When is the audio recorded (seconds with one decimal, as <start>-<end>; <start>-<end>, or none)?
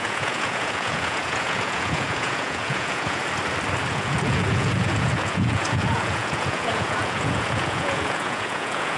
3.2-3.9